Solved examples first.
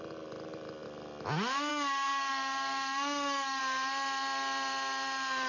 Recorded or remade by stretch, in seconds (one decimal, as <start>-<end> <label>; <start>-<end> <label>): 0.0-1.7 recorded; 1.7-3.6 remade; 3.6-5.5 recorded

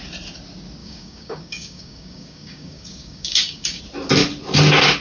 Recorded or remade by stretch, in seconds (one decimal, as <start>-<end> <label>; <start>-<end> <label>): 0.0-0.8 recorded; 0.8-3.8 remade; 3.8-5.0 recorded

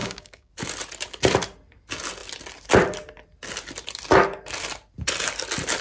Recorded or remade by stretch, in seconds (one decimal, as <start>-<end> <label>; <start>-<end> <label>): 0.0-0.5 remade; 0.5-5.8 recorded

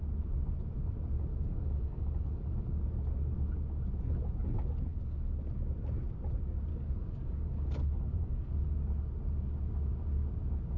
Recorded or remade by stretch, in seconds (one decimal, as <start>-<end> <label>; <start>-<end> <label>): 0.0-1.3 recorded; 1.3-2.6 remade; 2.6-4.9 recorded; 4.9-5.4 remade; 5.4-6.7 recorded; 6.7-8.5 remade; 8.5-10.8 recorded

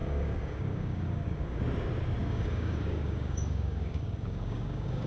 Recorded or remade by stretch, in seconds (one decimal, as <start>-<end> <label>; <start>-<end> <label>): 0.0-1.6 remade; 1.6-2.2 recorded; 2.2-5.1 remade

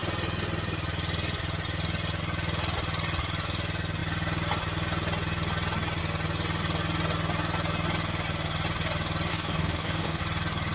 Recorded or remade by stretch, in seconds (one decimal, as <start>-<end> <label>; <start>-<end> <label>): 0.0-9.3 recorded; 9.3-10.2 remade; 10.2-10.7 recorded